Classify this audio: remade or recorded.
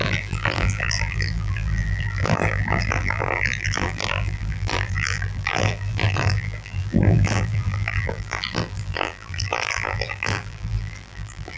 remade